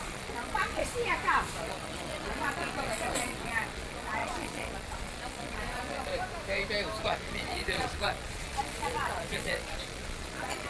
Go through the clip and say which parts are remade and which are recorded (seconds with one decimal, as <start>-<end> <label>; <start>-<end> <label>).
0.0-0.8 remade; 0.8-1.6 recorded; 1.6-6.1 remade; 6.1-7.0 recorded; 7.0-10.7 remade